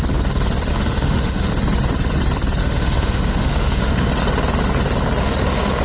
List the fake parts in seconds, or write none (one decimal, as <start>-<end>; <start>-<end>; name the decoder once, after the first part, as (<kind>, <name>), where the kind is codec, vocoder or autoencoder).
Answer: 0.7-1.5 (autoencoder, DAC-VAE); 2.6-4.1; 5.2-5.8